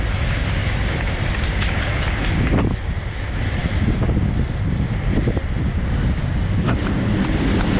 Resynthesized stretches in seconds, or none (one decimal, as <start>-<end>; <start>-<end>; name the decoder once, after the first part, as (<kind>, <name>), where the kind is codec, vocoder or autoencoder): 0.6-1.3 (vocoder, BigVGAN v2); 3.6-4.6; 6.8-7.8